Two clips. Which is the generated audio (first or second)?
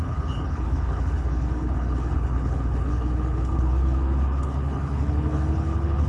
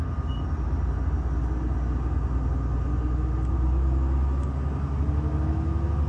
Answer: first